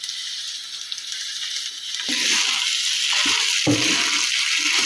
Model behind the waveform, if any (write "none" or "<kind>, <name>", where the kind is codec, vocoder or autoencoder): none